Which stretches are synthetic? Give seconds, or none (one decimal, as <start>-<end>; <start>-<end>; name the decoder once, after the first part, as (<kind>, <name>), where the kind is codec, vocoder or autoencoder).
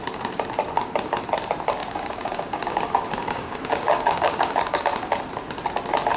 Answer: 1.8-4.8 (codec, DAC)